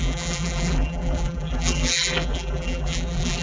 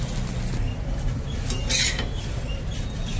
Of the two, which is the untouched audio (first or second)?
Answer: second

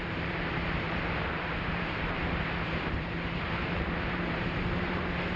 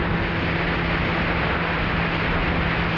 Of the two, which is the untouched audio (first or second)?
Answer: second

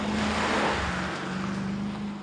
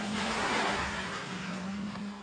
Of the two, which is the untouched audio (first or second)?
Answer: first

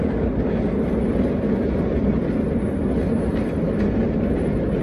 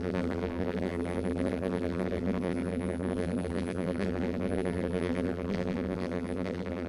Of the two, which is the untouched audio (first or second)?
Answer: first